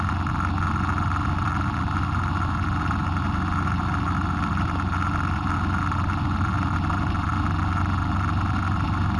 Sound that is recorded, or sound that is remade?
recorded